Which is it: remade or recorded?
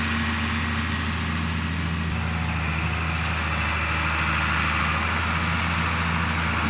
recorded